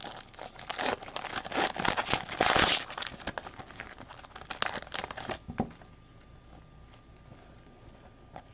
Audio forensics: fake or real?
real